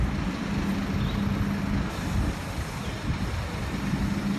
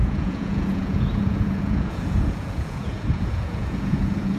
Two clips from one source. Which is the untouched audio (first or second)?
first